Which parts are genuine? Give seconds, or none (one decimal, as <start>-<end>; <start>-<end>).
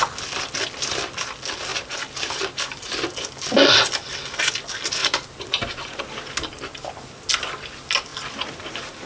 0.0-1.7; 3.0-5.0; 6.0-9.1